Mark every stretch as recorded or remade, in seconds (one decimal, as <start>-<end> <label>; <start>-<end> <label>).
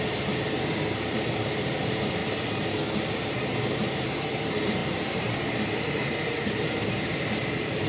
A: 0.0-2.2 remade; 2.2-3.1 recorded; 3.1-7.9 remade